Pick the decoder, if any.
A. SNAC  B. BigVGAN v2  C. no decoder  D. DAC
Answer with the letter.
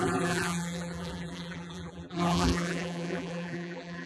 B